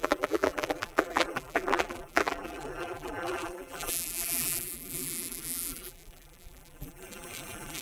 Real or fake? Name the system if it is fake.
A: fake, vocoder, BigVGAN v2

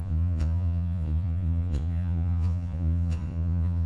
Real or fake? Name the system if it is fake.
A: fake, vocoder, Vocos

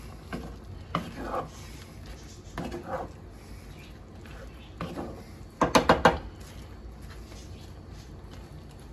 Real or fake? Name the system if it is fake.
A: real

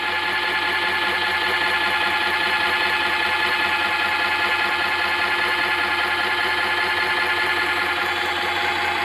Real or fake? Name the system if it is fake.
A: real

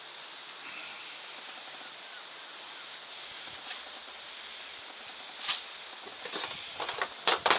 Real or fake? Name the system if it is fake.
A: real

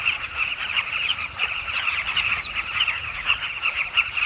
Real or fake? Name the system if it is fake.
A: fake, vocoder, Vocos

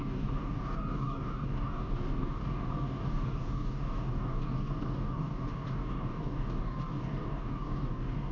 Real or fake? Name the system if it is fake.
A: fake, codec, DAC